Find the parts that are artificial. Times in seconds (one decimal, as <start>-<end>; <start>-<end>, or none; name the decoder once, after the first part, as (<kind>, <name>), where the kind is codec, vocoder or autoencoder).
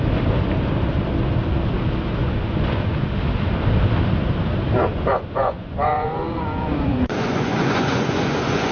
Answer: 2.2-3.1 (vocoder, Vocos); 4.8-8.7